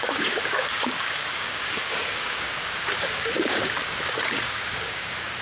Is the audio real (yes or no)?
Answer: no